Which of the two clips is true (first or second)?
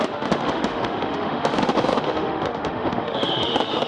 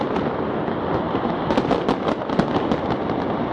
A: second